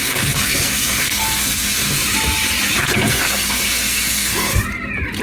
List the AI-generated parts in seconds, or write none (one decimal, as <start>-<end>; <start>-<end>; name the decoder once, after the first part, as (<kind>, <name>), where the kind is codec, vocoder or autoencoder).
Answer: 0.0-2.0 (codec, SNAC); 2.8-4.5